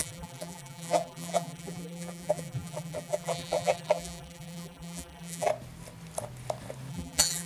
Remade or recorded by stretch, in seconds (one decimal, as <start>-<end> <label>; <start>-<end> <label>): 0.0-5.5 remade; 5.5-6.9 recorded; 6.9-7.5 remade